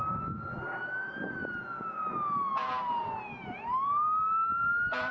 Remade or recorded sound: recorded